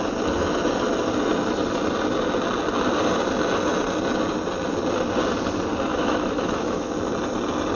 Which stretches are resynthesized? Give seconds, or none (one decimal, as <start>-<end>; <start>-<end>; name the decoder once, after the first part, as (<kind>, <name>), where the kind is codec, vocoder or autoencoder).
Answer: 5.9-6.9 (autoencoder, DAC-VAE)